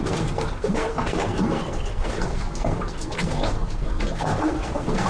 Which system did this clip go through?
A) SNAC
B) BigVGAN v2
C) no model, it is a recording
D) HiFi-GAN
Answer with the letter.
A